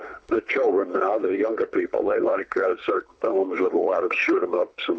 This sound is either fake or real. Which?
fake